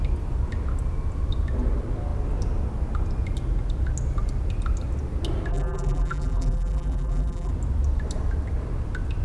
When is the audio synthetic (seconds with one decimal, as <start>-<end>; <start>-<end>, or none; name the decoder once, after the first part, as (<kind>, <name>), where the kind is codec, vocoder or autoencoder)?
5.5-7.5 (vocoder, BigVGAN v2)